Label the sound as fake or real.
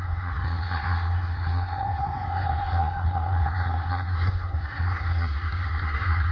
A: fake